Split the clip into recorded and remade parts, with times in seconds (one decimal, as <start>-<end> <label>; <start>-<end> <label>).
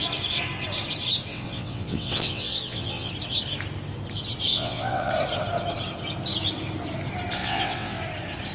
0.0-1.3 recorded; 1.3-3.1 remade; 3.1-4.5 recorded; 4.5-5.1 remade; 5.1-7.4 recorded; 7.4-8.0 remade; 8.0-8.5 recorded